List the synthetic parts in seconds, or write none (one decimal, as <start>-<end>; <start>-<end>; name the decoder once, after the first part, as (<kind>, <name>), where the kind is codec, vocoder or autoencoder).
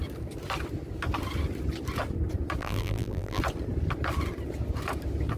2.6-3.4 (vocoder, BigVGAN v2)